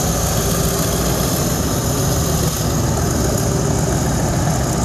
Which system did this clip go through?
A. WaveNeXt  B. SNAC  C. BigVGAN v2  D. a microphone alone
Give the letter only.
D